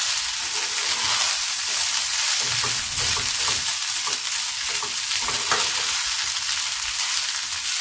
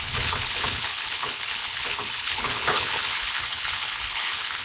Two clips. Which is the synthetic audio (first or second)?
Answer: second